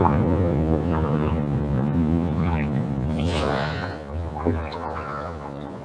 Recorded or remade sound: remade